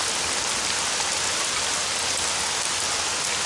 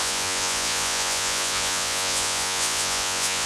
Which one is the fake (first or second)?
second